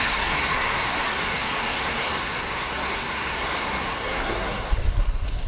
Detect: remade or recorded remade